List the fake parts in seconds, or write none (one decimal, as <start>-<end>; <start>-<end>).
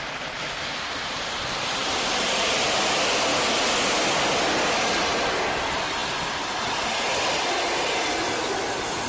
1.8-2.6